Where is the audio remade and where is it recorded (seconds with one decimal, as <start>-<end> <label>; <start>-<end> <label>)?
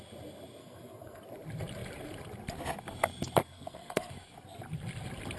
0.0-0.6 recorded; 0.6-1.2 remade; 1.2-3.4 recorded; 3.4-4.1 remade; 4.1-5.4 recorded